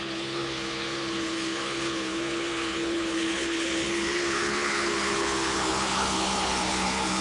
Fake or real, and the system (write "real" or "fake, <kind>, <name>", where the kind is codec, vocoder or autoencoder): fake, codec, HILCodec